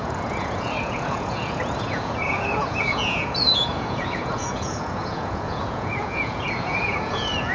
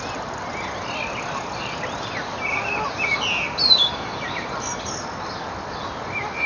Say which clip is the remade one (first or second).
first